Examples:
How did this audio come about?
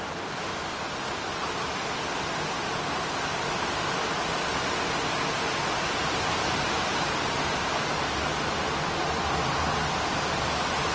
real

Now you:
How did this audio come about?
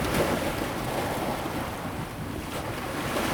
real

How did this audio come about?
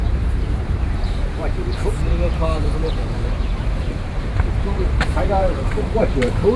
fake